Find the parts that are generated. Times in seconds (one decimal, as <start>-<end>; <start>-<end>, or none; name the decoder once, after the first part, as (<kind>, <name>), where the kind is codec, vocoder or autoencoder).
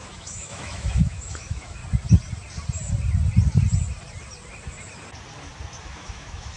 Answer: 0.0-1.8 (autoencoder, DAC-VAE); 5.8-6.6